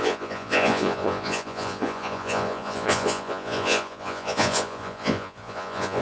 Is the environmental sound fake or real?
fake